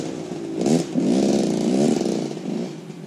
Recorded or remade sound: recorded